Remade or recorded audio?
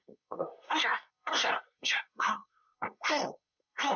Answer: remade